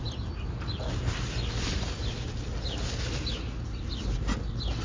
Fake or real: real